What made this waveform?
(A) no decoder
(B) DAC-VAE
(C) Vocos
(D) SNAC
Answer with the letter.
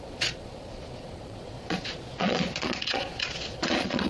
C